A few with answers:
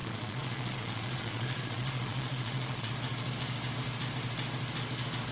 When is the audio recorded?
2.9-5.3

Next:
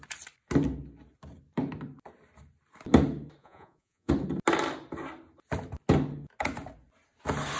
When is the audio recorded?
0.0-3.4; 4.1-7.6

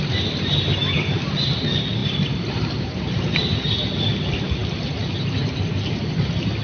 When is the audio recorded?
0.0-2.0; 3.4-6.6

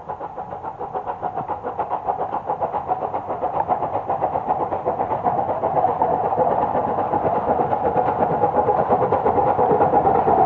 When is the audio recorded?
6.8-9.3

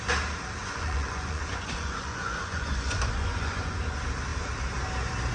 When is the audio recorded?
0.0-0.6; 3.8-5.3